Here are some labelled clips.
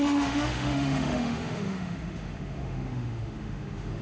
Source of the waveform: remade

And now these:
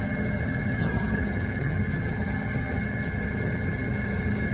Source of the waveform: remade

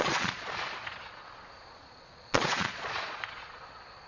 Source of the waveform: remade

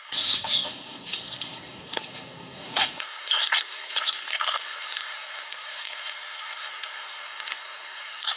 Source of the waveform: remade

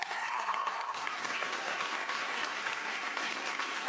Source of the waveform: remade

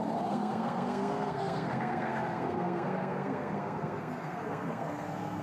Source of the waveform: remade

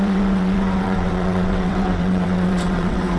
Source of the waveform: remade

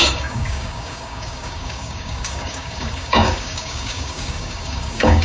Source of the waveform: remade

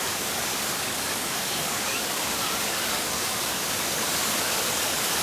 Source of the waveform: remade